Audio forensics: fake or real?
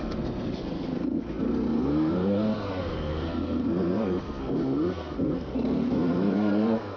fake